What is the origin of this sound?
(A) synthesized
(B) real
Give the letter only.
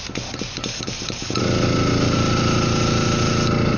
B